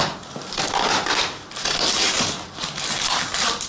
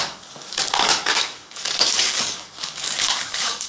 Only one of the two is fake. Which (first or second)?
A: second